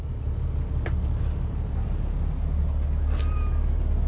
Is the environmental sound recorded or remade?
recorded